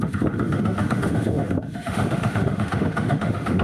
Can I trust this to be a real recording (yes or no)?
no